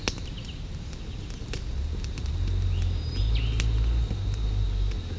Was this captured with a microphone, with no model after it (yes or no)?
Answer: yes